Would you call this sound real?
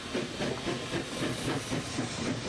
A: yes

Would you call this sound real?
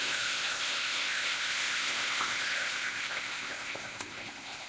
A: no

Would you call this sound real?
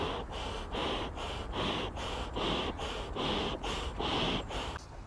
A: yes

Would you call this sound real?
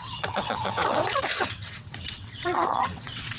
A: no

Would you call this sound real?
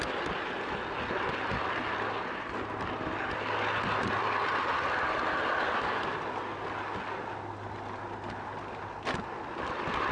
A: yes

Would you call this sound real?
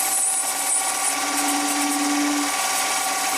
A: yes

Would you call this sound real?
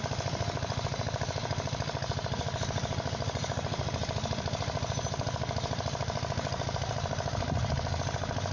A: yes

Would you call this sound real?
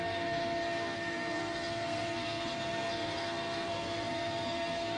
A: no